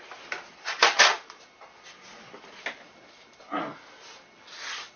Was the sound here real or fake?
real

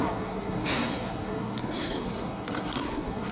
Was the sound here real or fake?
fake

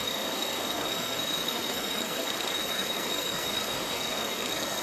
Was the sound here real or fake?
fake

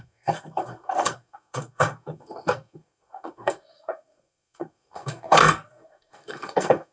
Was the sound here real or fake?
fake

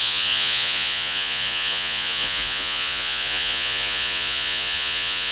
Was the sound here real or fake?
fake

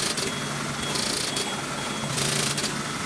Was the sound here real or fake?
real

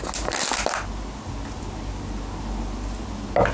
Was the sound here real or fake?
real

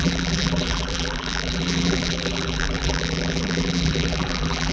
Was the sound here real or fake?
fake